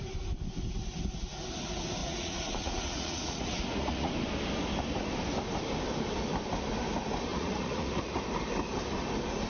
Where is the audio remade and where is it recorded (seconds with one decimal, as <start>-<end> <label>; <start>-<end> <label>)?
0.0-2.0 recorded; 2.0-4.1 remade; 4.1-7.3 recorded; 7.3-8.2 remade; 8.2-9.5 recorded